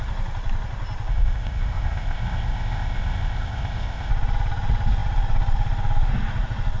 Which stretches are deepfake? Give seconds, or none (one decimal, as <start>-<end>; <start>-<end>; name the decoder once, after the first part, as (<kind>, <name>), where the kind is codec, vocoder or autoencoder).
1.1-4.1 (codec, ZipCodec)